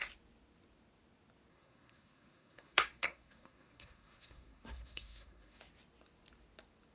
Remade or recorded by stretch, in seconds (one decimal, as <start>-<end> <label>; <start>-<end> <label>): 0.0-1.5 recorded; 1.5-5.6 remade; 5.6-6.9 recorded